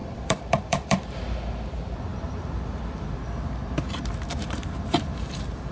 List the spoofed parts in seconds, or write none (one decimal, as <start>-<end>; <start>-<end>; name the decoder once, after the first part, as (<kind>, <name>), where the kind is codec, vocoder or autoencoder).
0.0-1.2 (vocoder, BigVGAN v2); 2.1-5.7